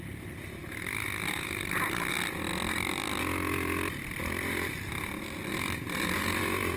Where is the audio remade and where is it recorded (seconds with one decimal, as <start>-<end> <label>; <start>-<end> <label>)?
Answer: 0.0-6.8 recorded